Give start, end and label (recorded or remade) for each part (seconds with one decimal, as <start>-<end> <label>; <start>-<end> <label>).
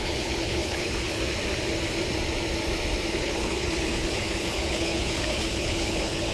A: 0.0-1.2 remade; 1.2-3.1 recorded; 3.1-6.3 remade